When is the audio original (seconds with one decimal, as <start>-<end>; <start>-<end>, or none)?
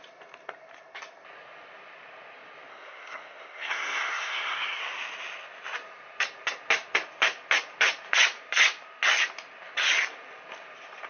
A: 0.0-2.7; 4.8-11.1